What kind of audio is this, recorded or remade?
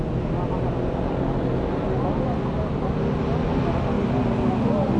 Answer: recorded